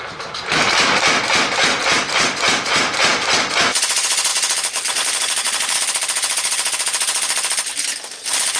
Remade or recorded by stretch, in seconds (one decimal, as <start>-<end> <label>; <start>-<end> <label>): 0.0-8.6 recorded